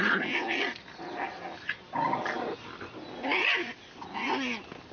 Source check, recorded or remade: recorded